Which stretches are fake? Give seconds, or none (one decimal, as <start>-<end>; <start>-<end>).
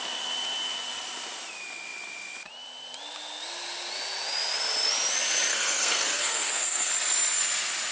5.5-6.9